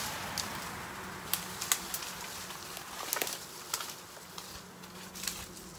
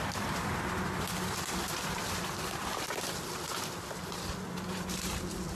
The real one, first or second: first